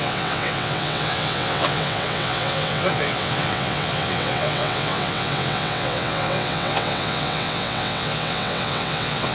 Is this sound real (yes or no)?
no